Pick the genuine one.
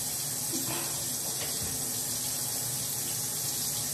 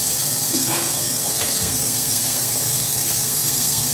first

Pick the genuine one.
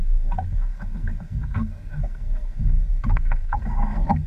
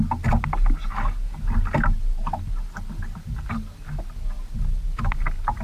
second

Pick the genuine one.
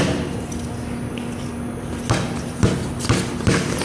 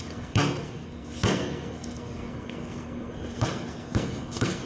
first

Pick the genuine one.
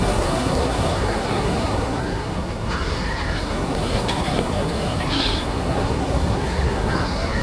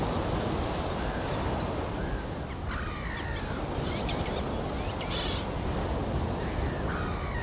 second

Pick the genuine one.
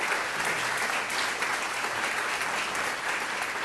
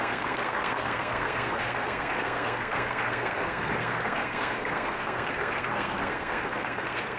first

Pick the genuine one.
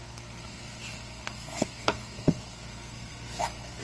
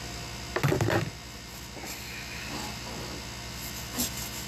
second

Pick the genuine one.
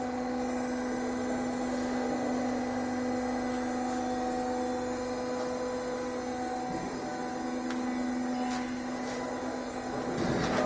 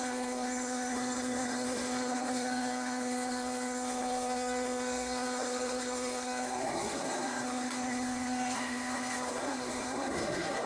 first